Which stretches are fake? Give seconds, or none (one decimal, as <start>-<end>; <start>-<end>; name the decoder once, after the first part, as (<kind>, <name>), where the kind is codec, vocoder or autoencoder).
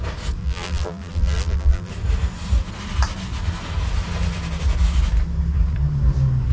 0.4-1.9 (vocoder, BigVGAN v2)